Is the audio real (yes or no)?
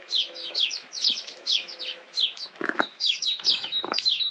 no